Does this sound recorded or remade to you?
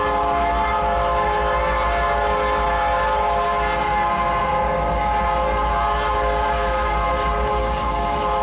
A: recorded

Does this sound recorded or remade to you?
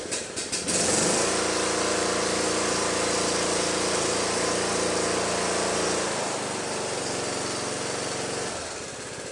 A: recorded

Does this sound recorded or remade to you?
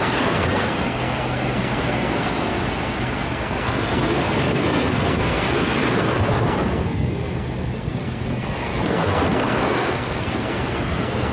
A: remade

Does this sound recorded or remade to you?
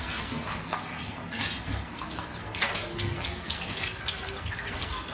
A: remade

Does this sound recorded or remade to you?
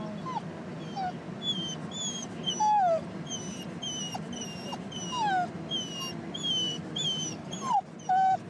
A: recorded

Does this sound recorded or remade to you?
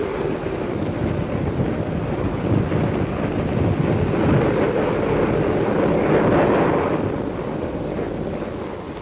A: recorded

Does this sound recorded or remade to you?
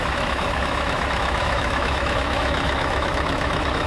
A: remade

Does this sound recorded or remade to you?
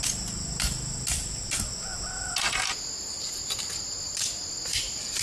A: recorded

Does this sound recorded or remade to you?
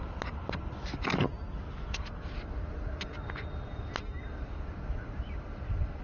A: recorded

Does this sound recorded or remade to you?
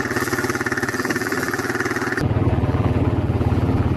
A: remade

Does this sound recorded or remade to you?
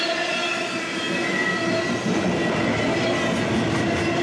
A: recorded